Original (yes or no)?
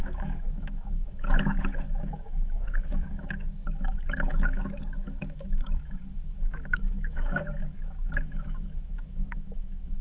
no